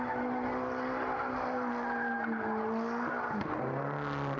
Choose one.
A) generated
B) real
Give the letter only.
B